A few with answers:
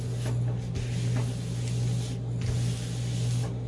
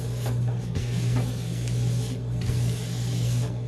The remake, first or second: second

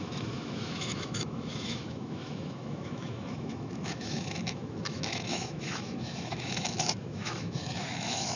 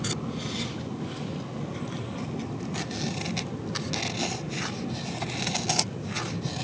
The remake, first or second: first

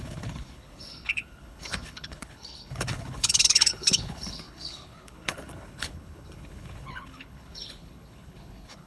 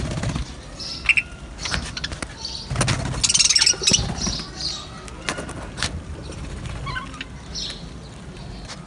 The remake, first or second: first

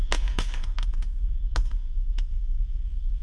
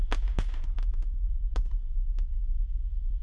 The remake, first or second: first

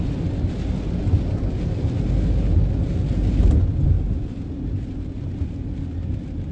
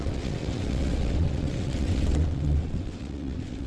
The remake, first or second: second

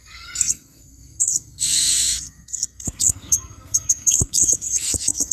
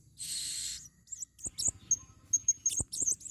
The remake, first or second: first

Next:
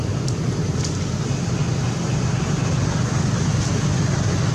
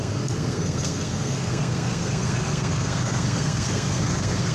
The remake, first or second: second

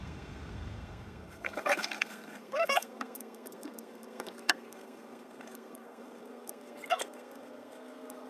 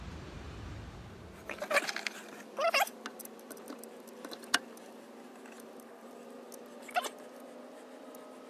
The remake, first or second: first